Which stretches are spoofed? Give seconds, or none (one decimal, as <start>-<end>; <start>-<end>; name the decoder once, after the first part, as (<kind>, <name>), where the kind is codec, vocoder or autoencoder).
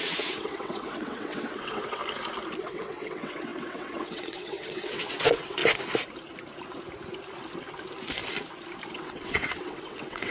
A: 0.0-2.0 (vocoder, WaveNeXt); 2.6-5.6; 8.9-10.3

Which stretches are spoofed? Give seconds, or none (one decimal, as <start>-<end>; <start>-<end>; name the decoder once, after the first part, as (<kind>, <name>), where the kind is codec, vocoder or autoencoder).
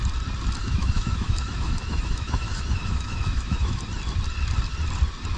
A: 0.6-3.8 (autoencoder, DAC-VAE)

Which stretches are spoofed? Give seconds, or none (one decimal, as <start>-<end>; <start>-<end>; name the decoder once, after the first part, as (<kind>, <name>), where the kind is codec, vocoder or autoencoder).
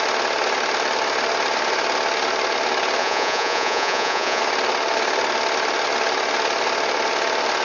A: 3.0-4.4 (vocoder, Vocos)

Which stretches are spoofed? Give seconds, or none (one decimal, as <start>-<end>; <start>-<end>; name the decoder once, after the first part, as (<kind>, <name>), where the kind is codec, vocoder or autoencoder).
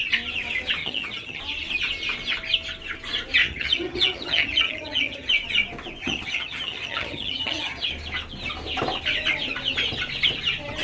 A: 0.8-1.4 (vocoder, HiFi-GAN); 3.4-5.3; 6.0-7.9